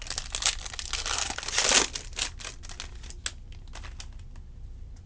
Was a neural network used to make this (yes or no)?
no